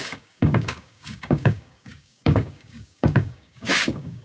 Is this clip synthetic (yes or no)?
yes